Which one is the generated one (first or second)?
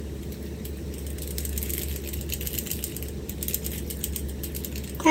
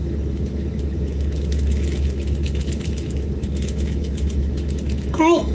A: second